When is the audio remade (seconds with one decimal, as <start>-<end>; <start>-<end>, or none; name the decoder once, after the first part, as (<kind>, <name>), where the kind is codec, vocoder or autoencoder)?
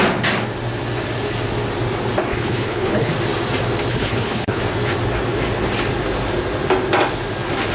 2.3-3.1 (codec, HILCodec); 3.9-4.6